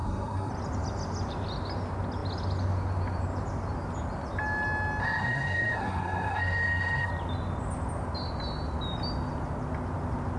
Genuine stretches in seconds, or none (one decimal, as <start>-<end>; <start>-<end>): 0.5-5.0; 7.1-10.4